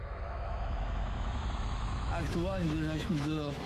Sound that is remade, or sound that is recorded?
remade